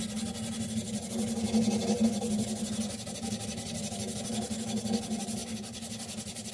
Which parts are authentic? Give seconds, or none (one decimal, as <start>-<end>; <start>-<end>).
0.0-6.5